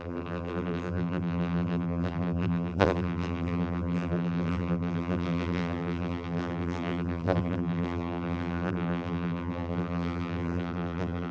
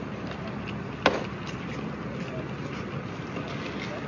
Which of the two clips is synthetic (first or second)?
first